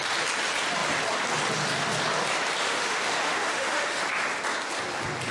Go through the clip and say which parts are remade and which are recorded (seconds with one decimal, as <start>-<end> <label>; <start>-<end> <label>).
0.0-2.6 recorded; 2.6-4.0 remade; 4.0-5.3 recorded